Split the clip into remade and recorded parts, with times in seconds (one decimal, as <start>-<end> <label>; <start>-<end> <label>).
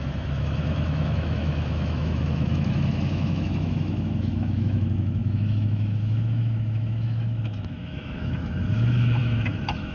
0.0-9.9 remade